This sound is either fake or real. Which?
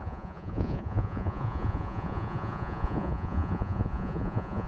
fake